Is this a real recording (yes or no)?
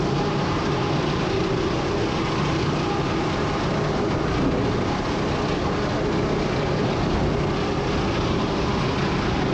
yes